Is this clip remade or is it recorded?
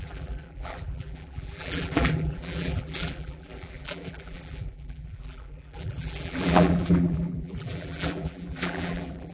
remade